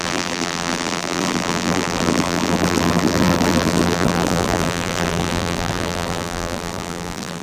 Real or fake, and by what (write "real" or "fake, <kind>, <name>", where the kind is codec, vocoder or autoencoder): fake, vocoder, BigVGAN v2